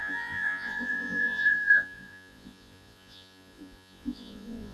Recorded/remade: remade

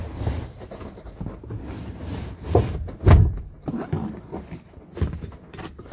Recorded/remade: recorded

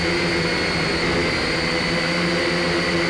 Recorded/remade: recorded